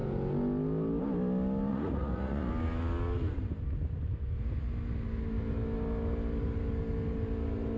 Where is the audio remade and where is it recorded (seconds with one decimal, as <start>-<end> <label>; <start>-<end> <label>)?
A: 0.0-1.7 recorded; 1.7-2.5 remade; 2.5-7.8 recorded